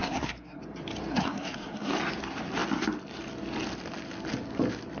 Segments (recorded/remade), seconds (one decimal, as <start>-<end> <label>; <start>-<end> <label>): 0.0-0.6 remade; 0.6-1.1 recorded; 1.1-1.9 remade; 1.9-5.0 recorded